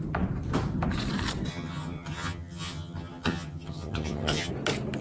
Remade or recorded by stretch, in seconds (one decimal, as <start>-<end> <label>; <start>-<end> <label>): 0.0-1.5 recorded; 1.5-4.5 remade; 4.5-5.0 recorded